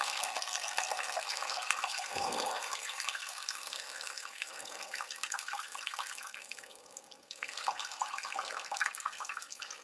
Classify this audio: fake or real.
fake